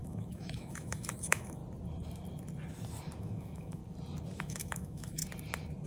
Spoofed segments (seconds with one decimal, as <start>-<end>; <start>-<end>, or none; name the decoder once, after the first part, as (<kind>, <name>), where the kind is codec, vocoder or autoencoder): 0.0-1.6 (autoencoder, DAC-VAE); 3.2-3.8; 4.4-5.2